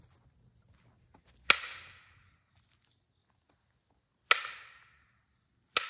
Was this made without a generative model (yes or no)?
yes